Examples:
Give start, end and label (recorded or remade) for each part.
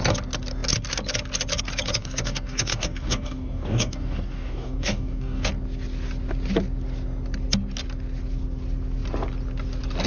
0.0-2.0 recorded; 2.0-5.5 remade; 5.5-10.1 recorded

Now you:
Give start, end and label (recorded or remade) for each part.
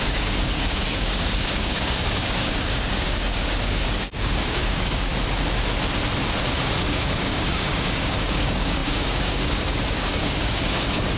0.0-5.1 remade; 5.1-6.8 recorded; 6.8-11.2 remade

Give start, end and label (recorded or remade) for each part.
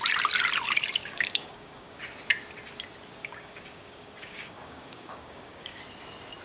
0.0-1.0 recorded; 1.0-2.0 remade; 2.0-3.2 recorded; 3.2-5.8 remade; 5.8-6.4 recorded